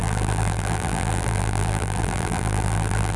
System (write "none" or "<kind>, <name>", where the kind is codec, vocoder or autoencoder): vocoder, BigVGAN v2